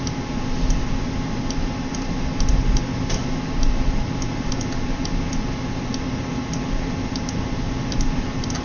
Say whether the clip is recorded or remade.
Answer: recorded